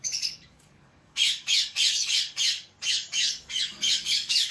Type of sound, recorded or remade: remade